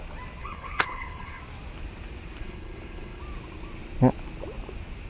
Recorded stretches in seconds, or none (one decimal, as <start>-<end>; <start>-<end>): 0.0-0.4; 1.4-2.4; 3.2-5.1